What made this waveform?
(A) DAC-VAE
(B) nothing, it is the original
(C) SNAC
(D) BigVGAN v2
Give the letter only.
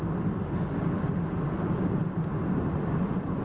D